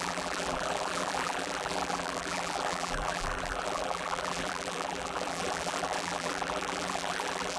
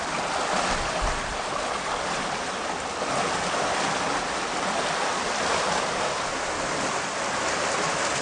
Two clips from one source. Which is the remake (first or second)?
first